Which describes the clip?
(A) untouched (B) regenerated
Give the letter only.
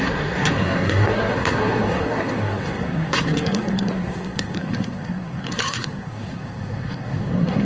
B